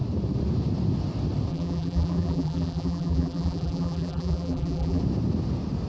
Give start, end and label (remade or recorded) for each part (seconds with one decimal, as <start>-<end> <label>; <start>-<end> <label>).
0.0-1.5 recorded; 1.5-5.0 remade; 5.0-5.9 recorded